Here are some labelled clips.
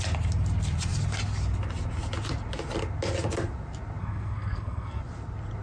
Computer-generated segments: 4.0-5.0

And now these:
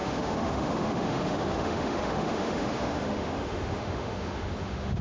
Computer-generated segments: 0.0-5.0